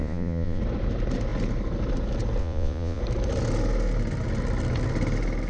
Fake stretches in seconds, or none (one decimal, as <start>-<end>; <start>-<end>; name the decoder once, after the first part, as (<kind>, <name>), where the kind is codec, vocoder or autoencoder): 0.0-0.6 (vocoder, Vocos); 2.4-3.0